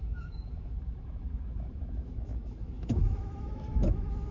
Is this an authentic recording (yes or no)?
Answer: no